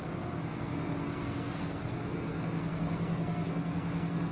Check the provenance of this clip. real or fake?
fake